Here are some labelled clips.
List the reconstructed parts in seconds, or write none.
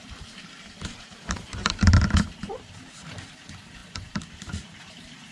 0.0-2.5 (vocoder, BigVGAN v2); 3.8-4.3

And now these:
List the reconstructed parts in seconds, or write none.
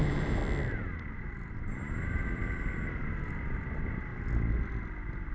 0.0-0.4 (vocoder, BigVGAN v2); 1.1-2.4; 3.0-4.1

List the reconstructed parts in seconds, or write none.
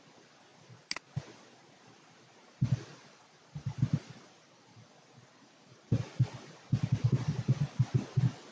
none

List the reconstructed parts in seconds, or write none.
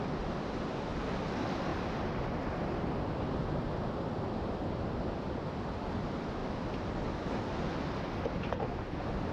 0.0-1.7 (vocoder, BigVGAN v2); 5.4-6.4; 8.4-9.3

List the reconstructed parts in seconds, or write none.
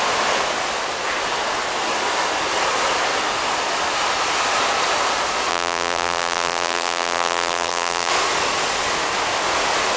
5.5-8.1 (vocoder, BigVGAN v2)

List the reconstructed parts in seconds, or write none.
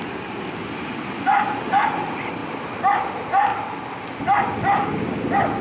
none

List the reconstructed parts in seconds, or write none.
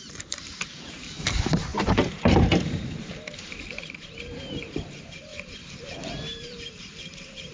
0.0-5.3 (vocoder, BigVGAN v2); 6.3-7.5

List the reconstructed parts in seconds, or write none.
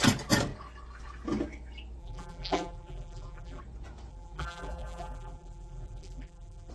2.0-3.6 (vocoder, BigVGAN v2); 4.1-6.7